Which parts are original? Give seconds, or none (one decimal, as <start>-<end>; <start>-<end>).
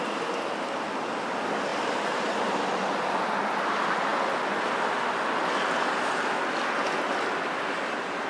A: 0.0-8.3